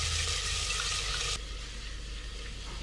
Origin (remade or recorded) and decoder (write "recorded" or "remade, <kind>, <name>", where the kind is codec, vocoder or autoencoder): recorded